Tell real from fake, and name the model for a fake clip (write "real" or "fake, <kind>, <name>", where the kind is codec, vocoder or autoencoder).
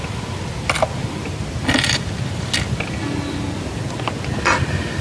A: real